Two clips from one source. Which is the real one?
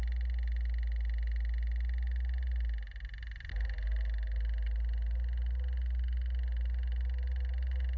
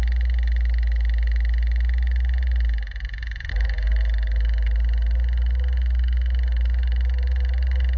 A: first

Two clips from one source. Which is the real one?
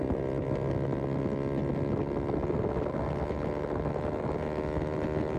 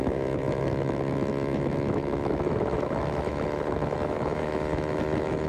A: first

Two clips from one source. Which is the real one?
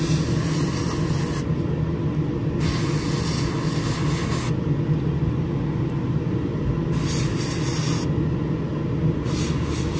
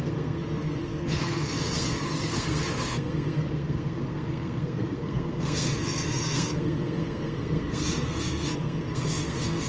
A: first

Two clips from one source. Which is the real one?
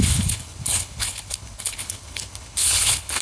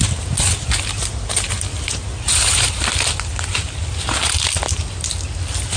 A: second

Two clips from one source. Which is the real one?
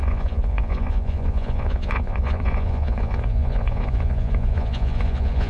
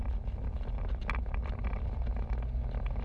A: second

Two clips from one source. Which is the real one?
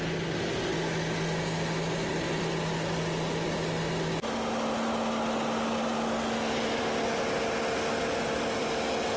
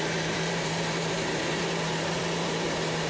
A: first